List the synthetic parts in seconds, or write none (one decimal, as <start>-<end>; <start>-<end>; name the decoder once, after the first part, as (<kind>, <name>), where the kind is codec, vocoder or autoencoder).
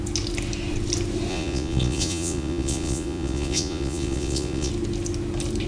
1.3-4.7 (vocoder, Vocos)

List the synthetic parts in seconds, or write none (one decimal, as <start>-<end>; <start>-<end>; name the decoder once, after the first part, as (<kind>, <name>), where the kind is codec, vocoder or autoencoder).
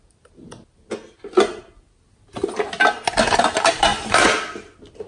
none